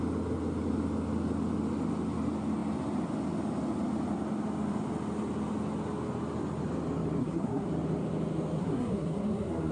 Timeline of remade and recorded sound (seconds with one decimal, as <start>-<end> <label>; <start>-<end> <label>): 0.0-7.2 recorded; 7.2-7.7 remade; 7.7-8.6 recorded; 8.6-9.7 remade